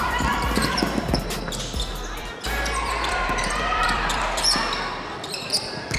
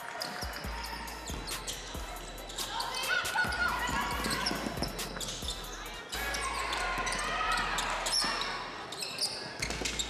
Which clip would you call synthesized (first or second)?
first